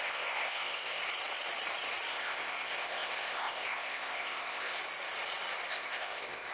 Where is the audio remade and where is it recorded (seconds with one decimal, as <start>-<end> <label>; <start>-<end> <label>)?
0.0-1.0 remade; 1.0-2.1 recorded; 2.1-4.8 remade; 4.8-5.7 recorded; 5.7-6.5 remade